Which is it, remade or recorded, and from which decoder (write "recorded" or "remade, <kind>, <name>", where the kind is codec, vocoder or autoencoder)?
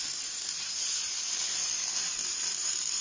recorded